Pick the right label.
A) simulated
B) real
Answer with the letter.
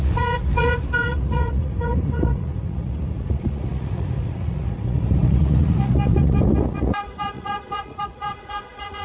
A